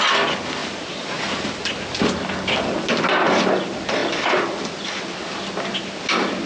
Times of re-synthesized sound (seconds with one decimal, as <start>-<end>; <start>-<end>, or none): none